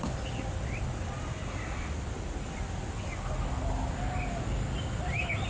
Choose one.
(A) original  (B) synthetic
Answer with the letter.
A